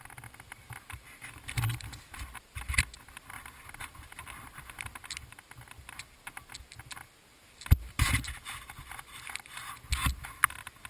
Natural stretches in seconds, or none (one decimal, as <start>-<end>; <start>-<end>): 0.0-10.9